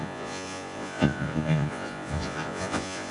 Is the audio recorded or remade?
remade